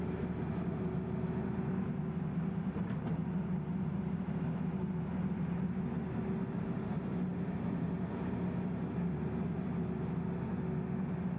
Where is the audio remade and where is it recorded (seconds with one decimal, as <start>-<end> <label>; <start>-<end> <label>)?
0.0-11.4 recorded